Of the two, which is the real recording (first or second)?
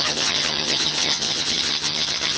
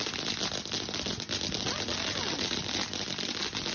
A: second